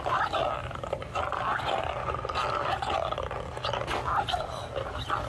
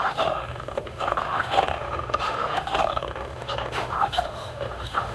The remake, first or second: second